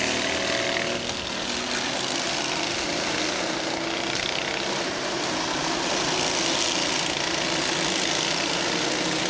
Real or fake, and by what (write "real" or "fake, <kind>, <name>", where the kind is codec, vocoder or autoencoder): real